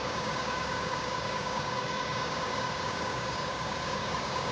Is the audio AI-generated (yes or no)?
yes